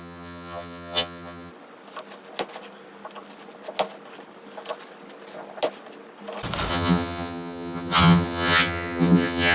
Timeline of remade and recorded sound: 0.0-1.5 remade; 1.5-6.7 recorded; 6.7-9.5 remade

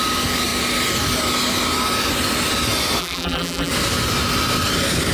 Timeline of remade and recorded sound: 0.0-3.0 recorded; 3.0-3.7 remade; 3.7-5.1 recorded

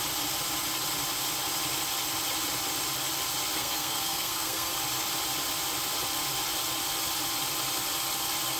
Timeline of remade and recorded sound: 0.0-3.6 recorded; 3.6-4.7 remade; 4.7-8.6 recorded

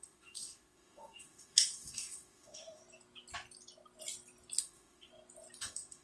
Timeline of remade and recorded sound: 0.0-2.8 remade; 2.8-4.6 recorded; 4.6-5.1 remade; 5.1-5.6 recorded; 5.6-6.0 remade